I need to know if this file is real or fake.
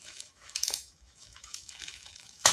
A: fake